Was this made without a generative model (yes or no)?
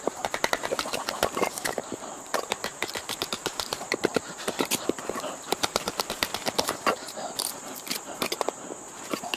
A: no